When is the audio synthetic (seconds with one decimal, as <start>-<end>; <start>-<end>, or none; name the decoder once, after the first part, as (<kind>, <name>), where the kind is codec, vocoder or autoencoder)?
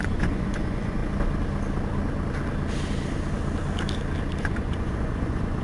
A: 0.0-1.0 (vocoder, Vocos); 4.4-5.6